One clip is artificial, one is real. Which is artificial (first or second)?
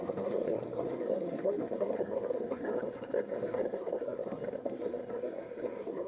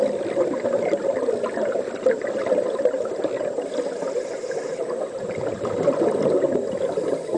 first